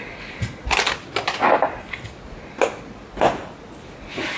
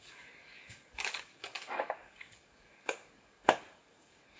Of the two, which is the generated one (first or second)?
second